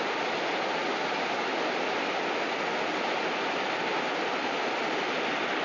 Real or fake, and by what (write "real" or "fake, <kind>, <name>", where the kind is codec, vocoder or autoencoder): real